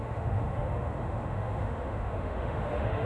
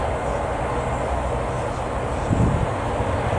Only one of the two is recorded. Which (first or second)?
second